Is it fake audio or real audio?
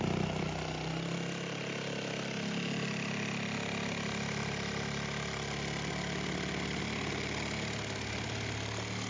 real